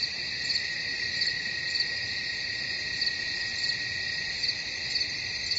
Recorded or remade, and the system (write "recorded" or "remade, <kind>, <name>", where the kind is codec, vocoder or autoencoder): recorded